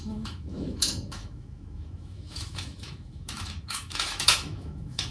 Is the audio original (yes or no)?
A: no